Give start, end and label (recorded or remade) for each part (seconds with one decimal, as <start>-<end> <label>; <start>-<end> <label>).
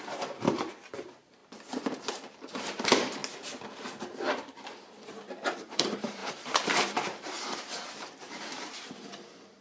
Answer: 0.0-1.4 remade; 1.4-2.0 recorded; 2.0-3.2 remade; 3.2-4.3 recorded; 4.3-9.6 remade